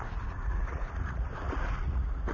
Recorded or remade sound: remade